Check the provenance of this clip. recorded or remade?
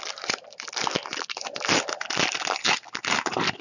recorded